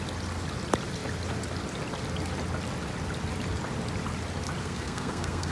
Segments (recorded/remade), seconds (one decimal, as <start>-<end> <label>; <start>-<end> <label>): 0.0-4.6 recorded; 4.6-5.5 remade

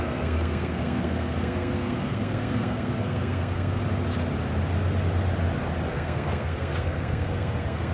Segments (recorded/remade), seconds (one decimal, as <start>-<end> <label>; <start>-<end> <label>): 0.0-3.8 remade; 3.8-5.9 recorded; 5.9-7.9 remade

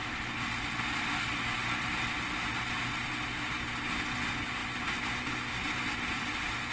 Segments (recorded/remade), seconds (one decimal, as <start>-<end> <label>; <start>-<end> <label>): 0.0-6.7 recorded

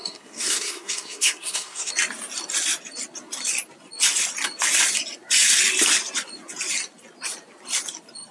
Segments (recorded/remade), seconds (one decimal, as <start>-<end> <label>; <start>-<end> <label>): 0.0-1.9 remade; 1.9-8.3 recorded

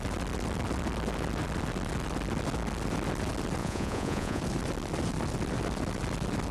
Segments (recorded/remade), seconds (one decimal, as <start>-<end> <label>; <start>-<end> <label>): 0.0-3.6 recorded; 3.6-4.4 remade; 4.4-6.5 recorded

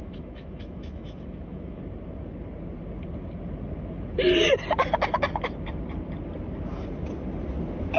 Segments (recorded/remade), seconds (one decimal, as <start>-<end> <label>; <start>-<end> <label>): 0.0-1.8 remade; 1.8-8.0 recorded

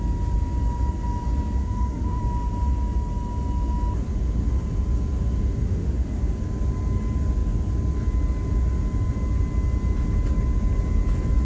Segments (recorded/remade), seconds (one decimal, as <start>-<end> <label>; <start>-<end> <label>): 0.0-1.6 recorded; 1.6-2.2 remade; 2.2-5.6 recorded; 5.6-6.2 remade; 6.2-11.4 recorded